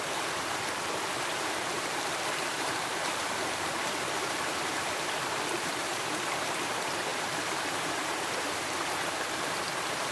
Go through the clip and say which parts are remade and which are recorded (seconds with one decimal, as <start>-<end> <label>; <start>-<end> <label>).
0.0-10.1 remade